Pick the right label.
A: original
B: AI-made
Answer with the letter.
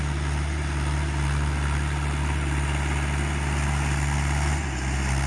A